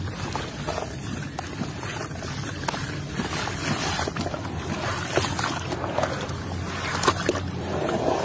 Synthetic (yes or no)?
no